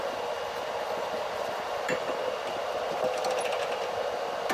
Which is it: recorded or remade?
recorded